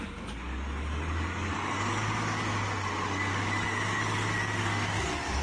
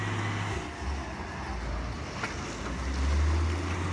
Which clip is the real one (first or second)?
second